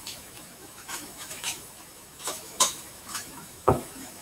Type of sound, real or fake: fake